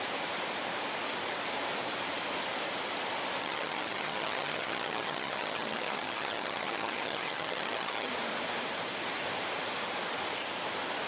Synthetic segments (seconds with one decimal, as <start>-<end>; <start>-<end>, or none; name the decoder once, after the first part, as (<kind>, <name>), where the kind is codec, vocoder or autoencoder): 3.4-8.1 (vocoder, HiFi-GAN)